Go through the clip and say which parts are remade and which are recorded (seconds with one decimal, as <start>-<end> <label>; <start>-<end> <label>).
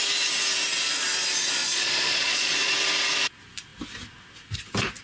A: 0.0-1.6 recorded; 1.6-2.7 remade; 2.7-5.0 recorded